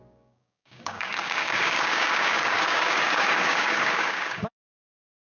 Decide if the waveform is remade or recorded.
remade